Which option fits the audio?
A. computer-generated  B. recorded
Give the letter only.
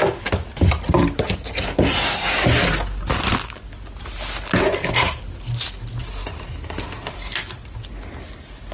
B